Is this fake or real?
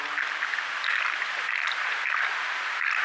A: real